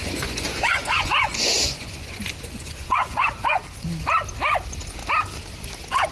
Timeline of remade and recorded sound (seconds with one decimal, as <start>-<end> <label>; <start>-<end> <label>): 0.0-3.6 remade; 3.6-6.1 recorded